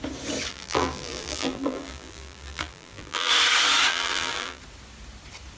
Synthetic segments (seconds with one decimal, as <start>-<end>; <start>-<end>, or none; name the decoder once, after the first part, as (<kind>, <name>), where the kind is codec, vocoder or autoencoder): 0.5-3.3 (vocoder, BigVGAN v2); 3.9-4.6